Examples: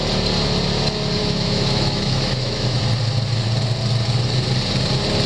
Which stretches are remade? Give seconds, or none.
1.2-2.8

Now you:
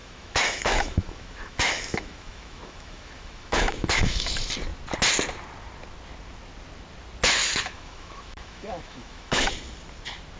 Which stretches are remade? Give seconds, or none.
0.0-4.3; 7.4-9.5